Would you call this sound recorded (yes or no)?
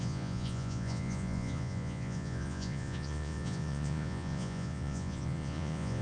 no